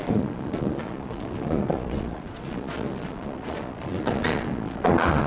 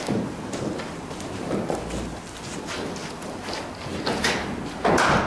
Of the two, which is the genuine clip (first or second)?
second